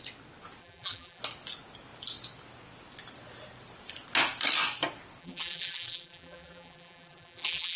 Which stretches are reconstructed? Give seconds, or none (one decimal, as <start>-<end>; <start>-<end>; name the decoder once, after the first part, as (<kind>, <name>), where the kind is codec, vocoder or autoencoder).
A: 0.6-1.2 (vocoder, BigVGAN v2); 5.2-7.8

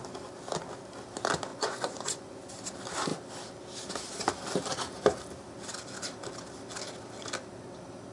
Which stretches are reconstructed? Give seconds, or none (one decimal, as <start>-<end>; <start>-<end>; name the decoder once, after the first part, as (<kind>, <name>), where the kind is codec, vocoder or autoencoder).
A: 1.5-2.5 (vocoder, Vocos)

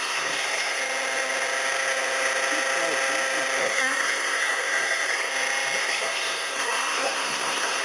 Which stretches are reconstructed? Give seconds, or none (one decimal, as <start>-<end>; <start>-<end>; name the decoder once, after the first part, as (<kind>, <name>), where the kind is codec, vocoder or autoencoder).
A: 0.0-0.8 (codec, SNAC); 3.6-5.3; 5.8-7.8

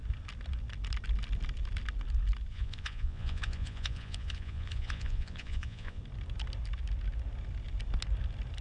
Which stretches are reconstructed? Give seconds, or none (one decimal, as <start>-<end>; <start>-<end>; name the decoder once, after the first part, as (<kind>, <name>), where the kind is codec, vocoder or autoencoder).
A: 2.5-6.0 (vocoder, Vocos)

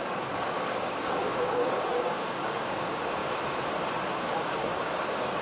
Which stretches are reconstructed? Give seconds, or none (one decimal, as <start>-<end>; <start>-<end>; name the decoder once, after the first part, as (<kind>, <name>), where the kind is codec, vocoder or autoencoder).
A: 0.0-3.2 (codec, DAC); 4.0-5.4

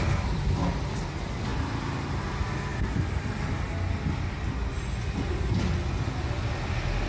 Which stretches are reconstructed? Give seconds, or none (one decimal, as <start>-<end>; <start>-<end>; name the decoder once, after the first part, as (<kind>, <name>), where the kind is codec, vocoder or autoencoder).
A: none